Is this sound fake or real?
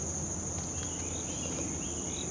real